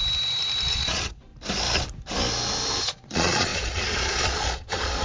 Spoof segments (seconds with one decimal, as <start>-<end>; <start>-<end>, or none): 0.7-1.3; 2.8-5.0

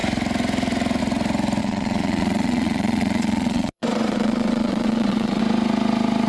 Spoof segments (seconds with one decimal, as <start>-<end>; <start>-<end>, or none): 1.6-5.4

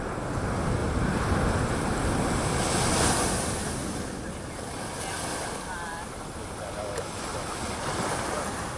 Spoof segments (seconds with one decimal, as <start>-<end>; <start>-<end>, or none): 0.8-1.3; 7.3-8.8